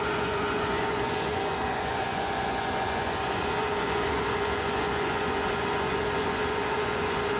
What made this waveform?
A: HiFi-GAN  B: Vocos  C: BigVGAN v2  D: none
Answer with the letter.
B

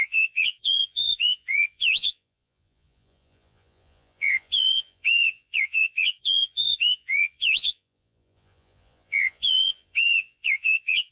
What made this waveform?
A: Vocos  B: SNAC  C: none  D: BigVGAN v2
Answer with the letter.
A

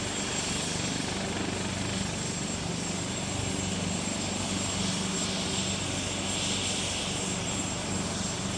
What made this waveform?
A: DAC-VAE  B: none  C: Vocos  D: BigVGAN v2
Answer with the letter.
B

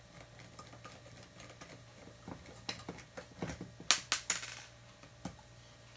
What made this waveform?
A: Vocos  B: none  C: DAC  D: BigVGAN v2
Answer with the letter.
B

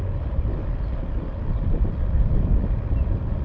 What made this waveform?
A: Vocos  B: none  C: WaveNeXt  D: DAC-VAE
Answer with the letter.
B